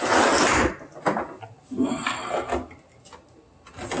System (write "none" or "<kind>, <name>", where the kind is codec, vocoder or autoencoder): none